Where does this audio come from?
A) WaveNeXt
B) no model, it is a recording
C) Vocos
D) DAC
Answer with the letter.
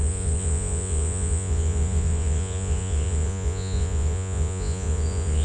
C